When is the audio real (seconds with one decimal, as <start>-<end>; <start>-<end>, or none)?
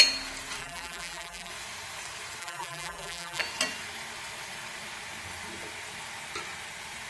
0.0-0.6; 1.5-2.4; 3.4-7.1